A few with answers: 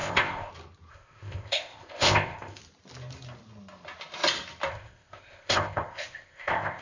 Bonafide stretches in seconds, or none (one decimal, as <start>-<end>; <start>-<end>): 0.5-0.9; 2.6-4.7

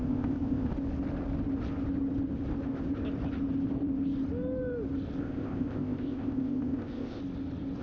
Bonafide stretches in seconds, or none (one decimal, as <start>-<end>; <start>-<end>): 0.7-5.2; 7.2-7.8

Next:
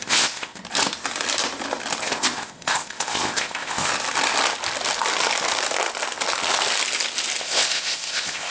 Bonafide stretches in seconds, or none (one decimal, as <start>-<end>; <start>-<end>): 0.6-2.0; 3.9-7.4

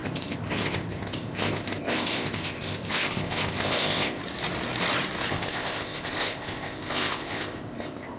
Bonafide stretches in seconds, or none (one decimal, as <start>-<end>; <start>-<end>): 4.2-5.3

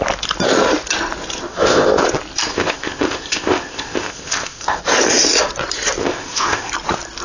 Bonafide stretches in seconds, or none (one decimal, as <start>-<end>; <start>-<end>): 0.0-1.5; 2.0-2.5; 4.8-6.0; 6.7-7.2

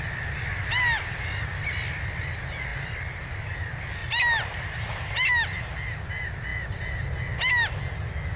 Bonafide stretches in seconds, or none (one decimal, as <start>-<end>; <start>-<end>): 0.0-8.4